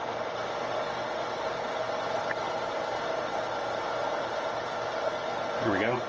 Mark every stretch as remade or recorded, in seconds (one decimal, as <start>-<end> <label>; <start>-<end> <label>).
0.0-6.1 recorded